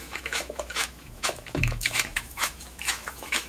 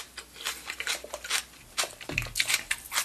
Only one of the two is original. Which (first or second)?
second